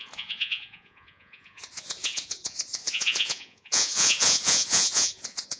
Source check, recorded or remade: remade